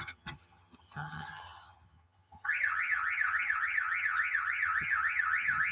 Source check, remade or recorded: remade